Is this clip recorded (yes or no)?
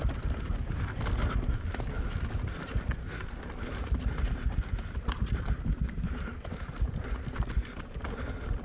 yes